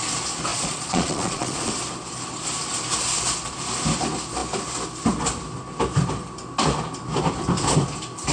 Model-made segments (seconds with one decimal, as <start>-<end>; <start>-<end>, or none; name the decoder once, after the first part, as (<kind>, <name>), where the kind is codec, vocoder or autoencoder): 0.5-1.7 (vocoder, Vocos)